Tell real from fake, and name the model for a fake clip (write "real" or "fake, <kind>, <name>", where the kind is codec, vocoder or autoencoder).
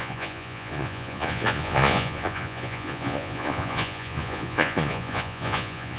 fake, vocoder, Vocos